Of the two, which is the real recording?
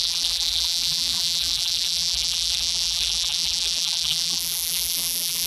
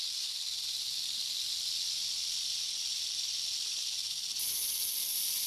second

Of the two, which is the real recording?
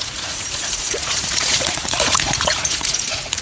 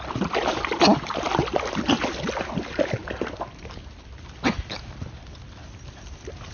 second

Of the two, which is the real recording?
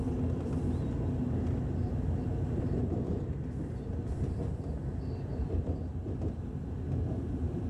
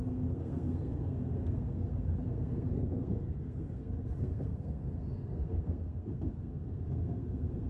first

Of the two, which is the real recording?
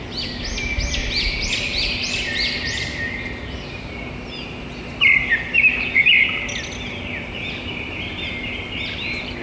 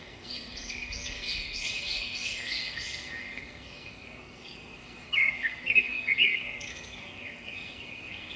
first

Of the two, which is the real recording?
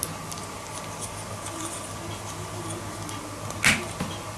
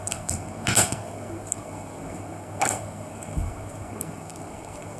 first